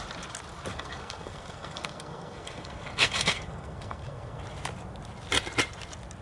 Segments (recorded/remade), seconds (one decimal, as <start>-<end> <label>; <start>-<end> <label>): 0.0-0.7 recorded; 0.7-4.4 remade; 4.4-6.2 recorded